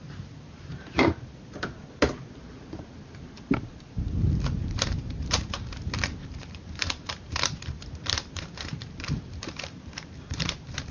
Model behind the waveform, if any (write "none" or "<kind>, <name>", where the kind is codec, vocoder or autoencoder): vocoder, BigVGAN v2